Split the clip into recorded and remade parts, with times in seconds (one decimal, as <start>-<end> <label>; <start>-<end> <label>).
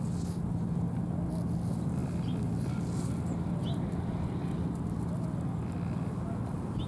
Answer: 0.0-6.9 recorded